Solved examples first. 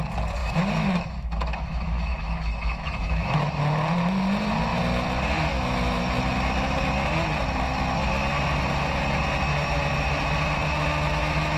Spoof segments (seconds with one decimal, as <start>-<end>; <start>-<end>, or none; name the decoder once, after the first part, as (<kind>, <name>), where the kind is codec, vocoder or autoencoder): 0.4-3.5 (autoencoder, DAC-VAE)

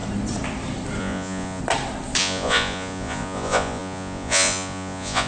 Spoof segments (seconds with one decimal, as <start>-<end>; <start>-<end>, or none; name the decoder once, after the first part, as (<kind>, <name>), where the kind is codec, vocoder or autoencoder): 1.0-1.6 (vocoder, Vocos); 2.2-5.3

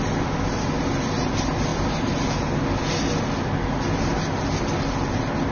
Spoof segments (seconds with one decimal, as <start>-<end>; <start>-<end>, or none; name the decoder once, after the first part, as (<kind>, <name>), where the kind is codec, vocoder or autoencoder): none

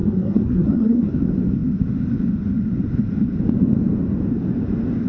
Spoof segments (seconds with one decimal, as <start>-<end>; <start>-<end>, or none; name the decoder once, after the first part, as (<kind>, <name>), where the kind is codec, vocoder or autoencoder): 0.0-1.1 (codec, SNAC)